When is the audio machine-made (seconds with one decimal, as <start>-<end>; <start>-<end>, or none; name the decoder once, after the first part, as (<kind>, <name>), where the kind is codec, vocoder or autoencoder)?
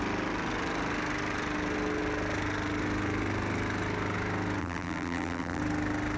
4.6-5.6 (vocoder, BigVGAN v2)